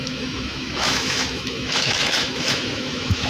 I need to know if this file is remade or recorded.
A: remade